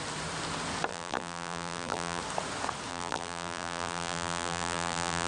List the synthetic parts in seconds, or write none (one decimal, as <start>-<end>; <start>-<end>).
0.9-2.2; 2.9-5.3